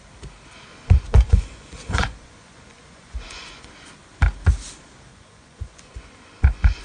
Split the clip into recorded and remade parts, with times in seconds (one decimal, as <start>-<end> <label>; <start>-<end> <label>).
0.0-0.7 recorded; 0.7-3.7 remade; 3.7-5.1 recorded; 5.1-6.8 remade